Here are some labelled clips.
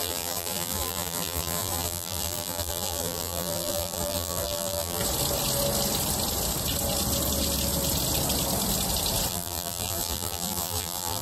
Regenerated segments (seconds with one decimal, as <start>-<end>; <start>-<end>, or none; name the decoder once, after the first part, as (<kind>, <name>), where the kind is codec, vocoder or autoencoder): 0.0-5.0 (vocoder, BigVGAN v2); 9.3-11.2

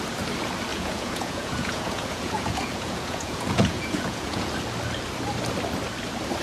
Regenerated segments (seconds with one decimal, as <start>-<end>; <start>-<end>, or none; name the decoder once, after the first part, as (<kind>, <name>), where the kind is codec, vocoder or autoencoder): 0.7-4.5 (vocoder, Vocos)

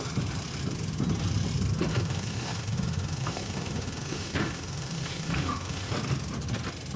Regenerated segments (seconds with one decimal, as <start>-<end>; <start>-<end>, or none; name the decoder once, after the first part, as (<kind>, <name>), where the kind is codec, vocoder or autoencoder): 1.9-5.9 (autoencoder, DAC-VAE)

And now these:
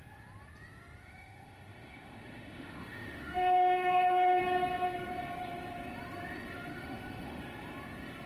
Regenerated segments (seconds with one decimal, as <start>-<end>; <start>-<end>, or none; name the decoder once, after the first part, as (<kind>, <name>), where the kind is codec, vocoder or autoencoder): 1.0-4.4 (autoencoder, DAC-VAE); 6.7-7.4

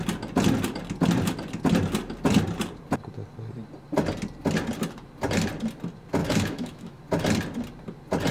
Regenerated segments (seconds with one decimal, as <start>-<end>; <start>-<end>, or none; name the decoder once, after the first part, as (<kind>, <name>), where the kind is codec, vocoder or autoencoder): 6.2-7.0 (autoencoder, DAC-VAE)